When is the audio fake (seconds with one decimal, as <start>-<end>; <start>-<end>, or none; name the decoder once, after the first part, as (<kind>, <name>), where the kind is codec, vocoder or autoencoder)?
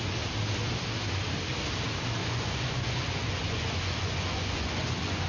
2.2-5.3 (vocoder, Vocos)